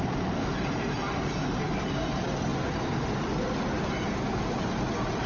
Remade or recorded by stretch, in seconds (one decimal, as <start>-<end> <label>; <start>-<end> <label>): 0.0-5.3 recorded